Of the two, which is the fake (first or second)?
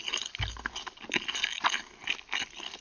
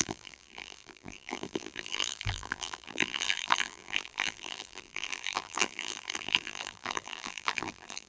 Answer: second